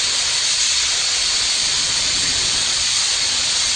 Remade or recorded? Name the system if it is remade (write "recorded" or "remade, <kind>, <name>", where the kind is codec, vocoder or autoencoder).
remade, vocoder, Vocos